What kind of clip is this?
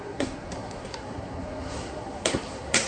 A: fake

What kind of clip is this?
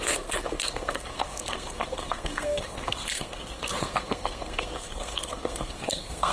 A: fake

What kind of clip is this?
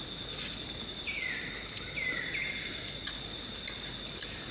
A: real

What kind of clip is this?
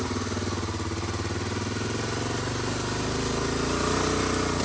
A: real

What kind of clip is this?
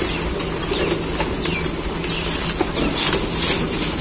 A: real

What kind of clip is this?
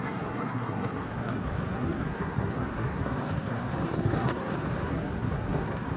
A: fake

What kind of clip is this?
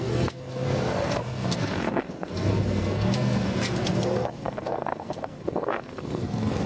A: fake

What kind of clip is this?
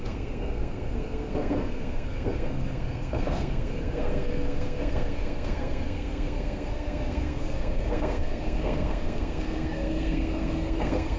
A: fake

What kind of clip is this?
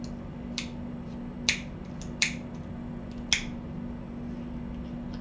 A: real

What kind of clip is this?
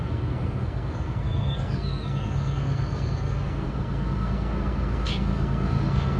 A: fake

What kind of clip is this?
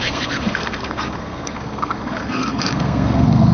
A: fake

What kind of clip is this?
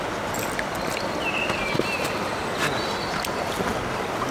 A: real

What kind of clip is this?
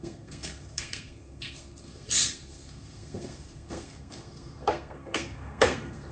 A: fake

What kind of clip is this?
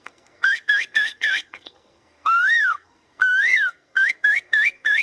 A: fake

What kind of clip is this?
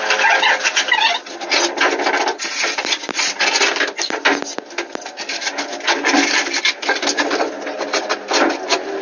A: real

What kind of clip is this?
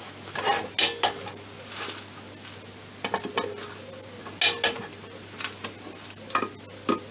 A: real